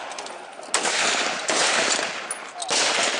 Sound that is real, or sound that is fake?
real